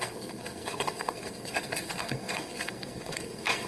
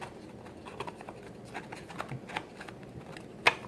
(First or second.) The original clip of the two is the second